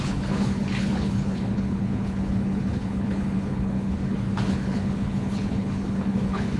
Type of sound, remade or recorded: remade